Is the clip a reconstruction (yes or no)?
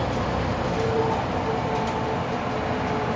no